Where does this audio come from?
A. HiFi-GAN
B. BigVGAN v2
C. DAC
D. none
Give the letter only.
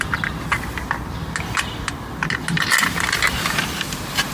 D